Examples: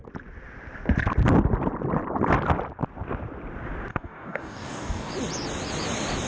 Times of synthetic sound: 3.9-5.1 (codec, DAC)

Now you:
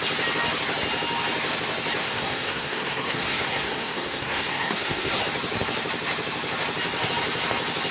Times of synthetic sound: 2.0-5.2 (codec, SNAC)

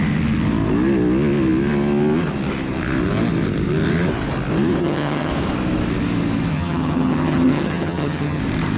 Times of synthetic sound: 4.8-5.3 (vocoder, HiFi-GAN); 6.5-8.4

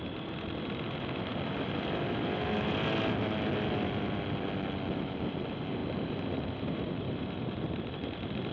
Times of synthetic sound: 5.8-7.8 (vocoder, BigVGAN v2)